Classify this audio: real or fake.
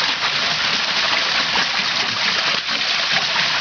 real